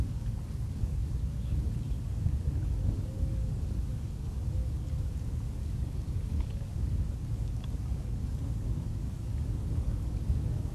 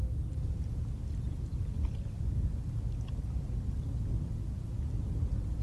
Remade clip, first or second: first